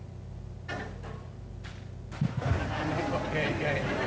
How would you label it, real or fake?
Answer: real